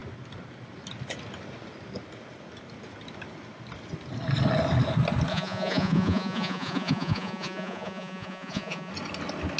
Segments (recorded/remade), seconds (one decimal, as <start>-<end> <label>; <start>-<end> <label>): 0.0-5.3 recorded; 5.3-8.9 remade; 8.9-9.6 recorded